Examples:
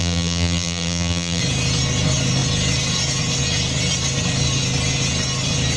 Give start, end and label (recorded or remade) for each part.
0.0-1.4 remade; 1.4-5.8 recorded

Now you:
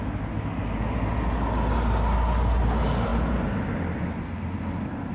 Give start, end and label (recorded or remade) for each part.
0.0-5.1 recorded

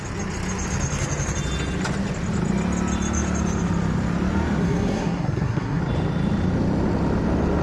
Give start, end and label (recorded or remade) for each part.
0.0-4.6 recorded; 4.6-5.8 remade; 5.8-7.6 recorded

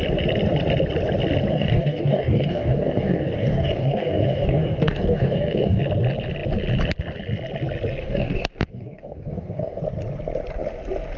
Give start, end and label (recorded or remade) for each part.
0.0-1.5 recorded; 1.5-5.8 remade; 5.8-8.0 recorded; 8.0-9.8 remade; 9.8-11.2 recorded